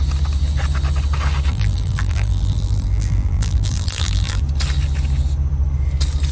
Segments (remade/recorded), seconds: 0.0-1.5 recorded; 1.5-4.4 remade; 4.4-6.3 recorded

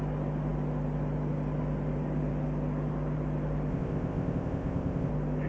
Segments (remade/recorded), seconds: 0.0-3.7 recorded; 3.7-5.1 remade; 5.1-5.5 recorded

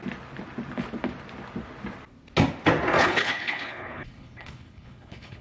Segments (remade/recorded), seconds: 0.0-3.0 recorded; 3.0-5.4 remade

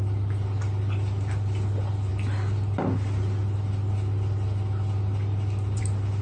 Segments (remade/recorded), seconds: 0.0-6.2 recorded

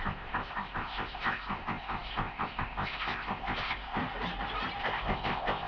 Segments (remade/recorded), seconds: 0.0-4.0 remade; 4.0-4.8 recorded; 4.8-5.7 remade

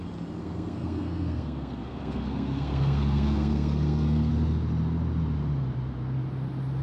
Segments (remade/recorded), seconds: 0.0-0.4 recorded; 0.4-4.3 remade; 4.3-6.8 recorded

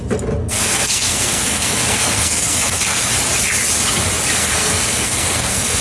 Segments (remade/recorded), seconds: 0.0-0.4 recorded; 0.4-3.1 remade; 3.1-4.4 recorded; 4.4-5.8 remade

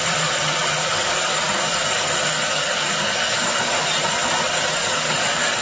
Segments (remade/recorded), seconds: 0.0-0.8 recorded; 0.8-3.9 remade; 3.9-4.8 recorded; 4.8-5.6 remade